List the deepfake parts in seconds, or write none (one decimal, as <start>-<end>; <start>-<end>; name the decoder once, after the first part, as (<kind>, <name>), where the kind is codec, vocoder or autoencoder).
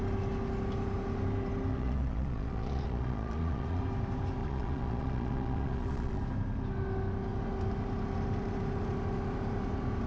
1.7-3.8 (vocoder, Vocos); 4.4-6.2